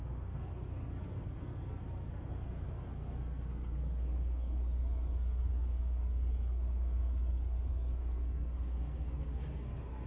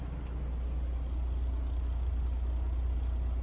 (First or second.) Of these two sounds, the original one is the second